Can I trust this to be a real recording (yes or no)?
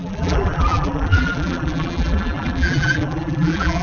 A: no